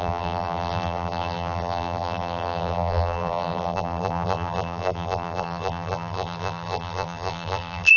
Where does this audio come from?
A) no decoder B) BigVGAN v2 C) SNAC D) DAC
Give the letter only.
B